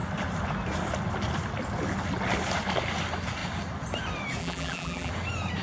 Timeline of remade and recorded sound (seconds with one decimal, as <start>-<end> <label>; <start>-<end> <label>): 0.0-4.4 recorded; 4.4-5.1 remade; 5.1-5.6 recorded